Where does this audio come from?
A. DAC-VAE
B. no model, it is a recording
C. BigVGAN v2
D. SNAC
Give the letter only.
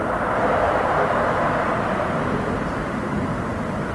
C